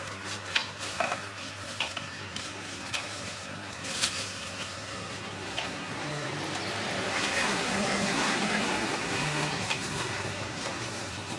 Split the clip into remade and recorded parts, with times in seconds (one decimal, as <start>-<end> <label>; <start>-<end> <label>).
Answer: 0.0-6.3 remade; 6.3-7.1 recorded; 7.1-11.4 remade